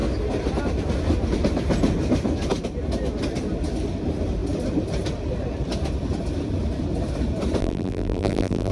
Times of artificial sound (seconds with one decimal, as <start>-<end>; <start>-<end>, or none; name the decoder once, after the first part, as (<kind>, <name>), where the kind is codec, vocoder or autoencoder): 7.6-8.7 (vocoder, BigVGAN v2)

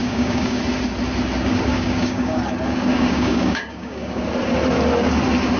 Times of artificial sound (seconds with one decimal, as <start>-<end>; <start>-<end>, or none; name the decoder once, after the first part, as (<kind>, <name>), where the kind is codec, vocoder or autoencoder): 0.0-0.6 (codec, DAC); 1.7-2.4; 2.9-4.2

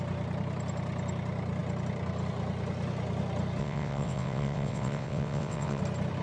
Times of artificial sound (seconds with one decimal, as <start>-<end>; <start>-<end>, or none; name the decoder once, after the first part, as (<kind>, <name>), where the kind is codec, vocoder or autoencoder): 3.6-5.8 (vocoder, WaveNeXt)